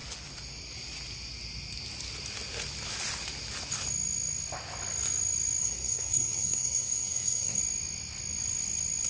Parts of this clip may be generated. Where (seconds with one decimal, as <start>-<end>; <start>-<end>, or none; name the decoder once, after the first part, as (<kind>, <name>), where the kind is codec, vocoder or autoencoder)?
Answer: 5.6-7.6 (codec, SNAC)